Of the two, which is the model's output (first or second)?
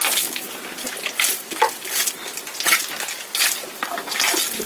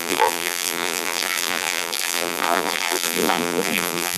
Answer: second